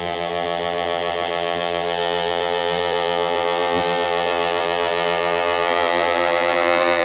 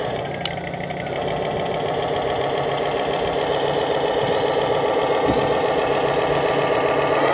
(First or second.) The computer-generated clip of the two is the first